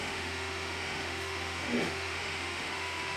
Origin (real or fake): fake